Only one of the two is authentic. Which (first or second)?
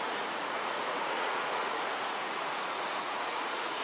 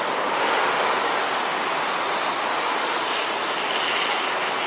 second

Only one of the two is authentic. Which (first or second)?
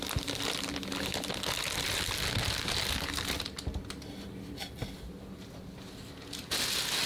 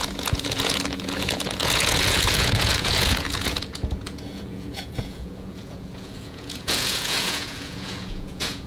first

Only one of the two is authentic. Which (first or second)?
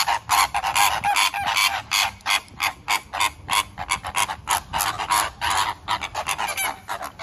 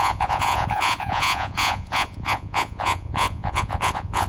first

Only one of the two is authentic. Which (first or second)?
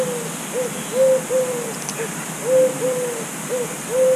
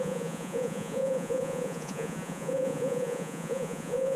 first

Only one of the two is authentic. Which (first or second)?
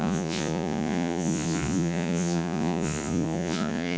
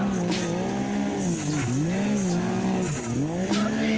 second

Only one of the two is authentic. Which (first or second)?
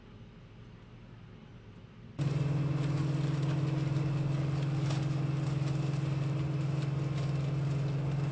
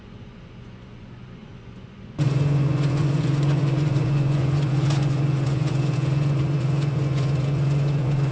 first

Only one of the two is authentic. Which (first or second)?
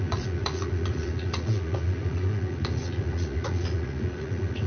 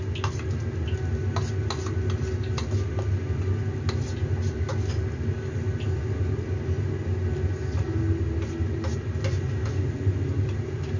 second